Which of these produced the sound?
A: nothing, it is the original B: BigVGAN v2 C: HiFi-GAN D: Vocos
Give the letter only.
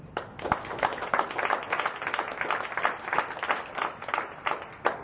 A